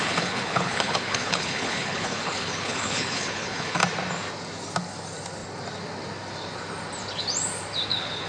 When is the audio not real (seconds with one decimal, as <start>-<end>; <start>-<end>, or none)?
0.0-3.8; 7.9-8.3